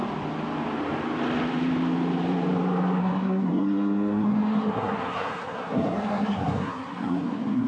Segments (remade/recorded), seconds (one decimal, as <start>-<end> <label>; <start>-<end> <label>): 0.0-3.0 recorded; 3.0-7.7 remade